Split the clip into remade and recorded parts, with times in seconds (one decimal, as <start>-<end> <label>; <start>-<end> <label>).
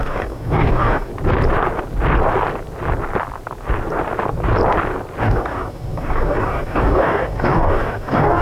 0.0-1.1 remade; 1.1-5.2 recorded; 5.2-8.4 remade